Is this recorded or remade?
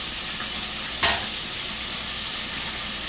recorded